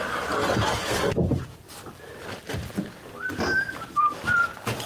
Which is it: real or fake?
fake